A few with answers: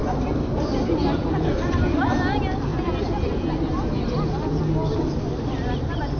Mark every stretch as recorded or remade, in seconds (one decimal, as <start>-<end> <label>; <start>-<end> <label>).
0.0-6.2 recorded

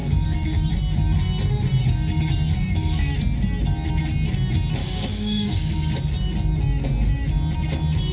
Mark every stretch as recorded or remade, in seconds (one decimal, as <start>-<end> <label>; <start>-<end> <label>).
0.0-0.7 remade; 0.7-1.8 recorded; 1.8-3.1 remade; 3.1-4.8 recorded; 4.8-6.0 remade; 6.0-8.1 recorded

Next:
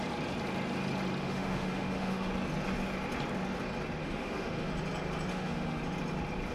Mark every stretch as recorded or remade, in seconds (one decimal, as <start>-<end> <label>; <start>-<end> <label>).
0.0-1.2 recorded; 1.2-2.3 remade; 2.3-4.0 recorded; 4.0-4.7 remade; 4.7-5.3 recorded; 5.3-5.8 remade; 5.8-6.5 recorded

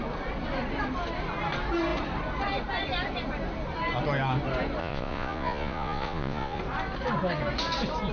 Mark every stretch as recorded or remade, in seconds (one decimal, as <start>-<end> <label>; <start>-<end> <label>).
0.0-4.8 recorded; 4.8-6.6 remade; 6.6-8.1 recorded

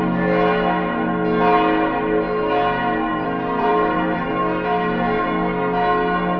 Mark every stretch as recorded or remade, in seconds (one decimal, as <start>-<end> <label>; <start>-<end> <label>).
0.0-3.1 recorded; 3.1-4.3 remade; 4.3-6.4 recorded

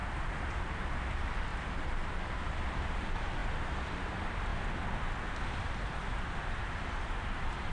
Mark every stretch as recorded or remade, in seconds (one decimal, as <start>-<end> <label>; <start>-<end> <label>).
0.0-0.6 recorded; 0.6-4.5 remade; 4.5-6.4 recorded; 6.4-7.7 remade

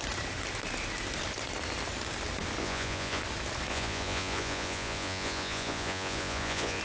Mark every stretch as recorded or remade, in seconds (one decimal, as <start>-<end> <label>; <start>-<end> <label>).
0.0-2.6 recorded; 2.6-3.2 remade; 3.2-3.7 recorded; 3.7-6.8 remade